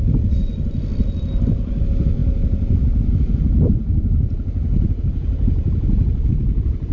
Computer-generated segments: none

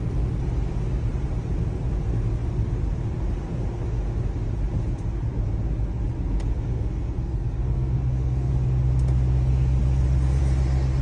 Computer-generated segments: 6.5-8.5 (codec, SNAC)

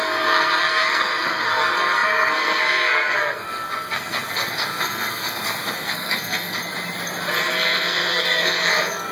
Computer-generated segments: 0.0-6.6 (codec, SNAC); 7.5-9.1

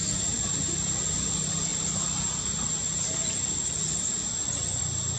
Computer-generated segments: none

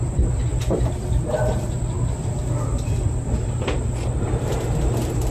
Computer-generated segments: none